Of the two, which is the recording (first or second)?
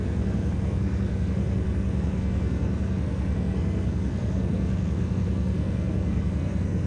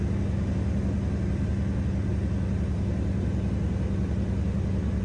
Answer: second